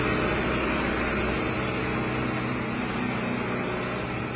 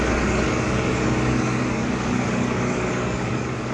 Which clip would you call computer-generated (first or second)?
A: second